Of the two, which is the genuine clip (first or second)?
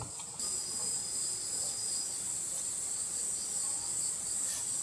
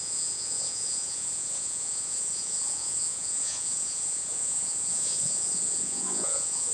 first